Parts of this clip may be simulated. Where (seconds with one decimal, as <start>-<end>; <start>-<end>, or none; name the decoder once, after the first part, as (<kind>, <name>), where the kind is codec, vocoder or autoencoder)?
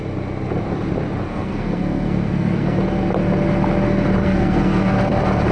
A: 1.3-2.8 (codec, SNAC); 4.2-5.0